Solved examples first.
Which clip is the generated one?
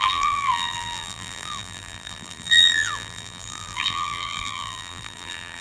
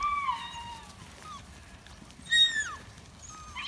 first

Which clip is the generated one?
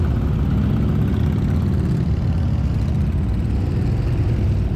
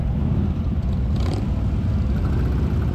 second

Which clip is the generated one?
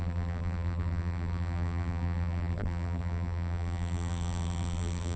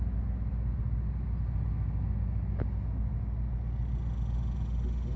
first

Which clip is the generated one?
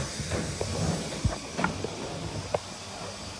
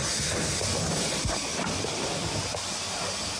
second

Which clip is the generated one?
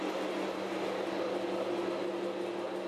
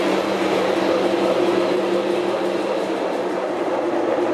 second